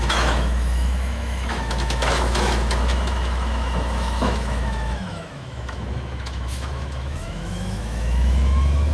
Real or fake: fake